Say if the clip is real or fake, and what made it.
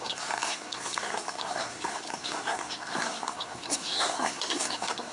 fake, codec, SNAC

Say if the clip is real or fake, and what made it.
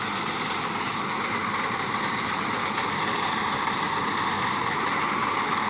real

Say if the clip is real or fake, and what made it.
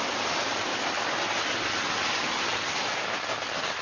real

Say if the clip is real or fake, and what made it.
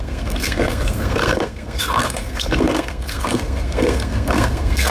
fake, codec, SNAC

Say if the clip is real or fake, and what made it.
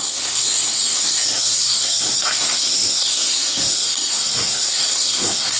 fake, codec, SNAC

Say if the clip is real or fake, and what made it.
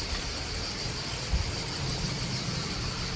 real